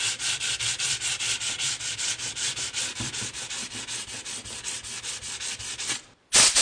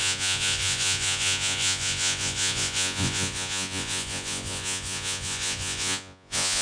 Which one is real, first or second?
first